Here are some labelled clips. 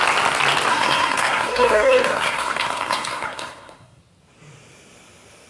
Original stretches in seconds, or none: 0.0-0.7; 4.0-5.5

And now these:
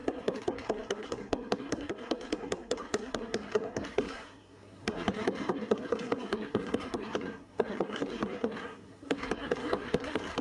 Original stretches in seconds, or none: none

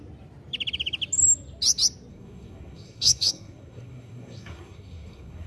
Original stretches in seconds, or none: 0.0-2.1

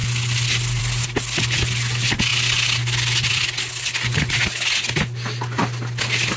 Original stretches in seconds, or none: 0.0-6.4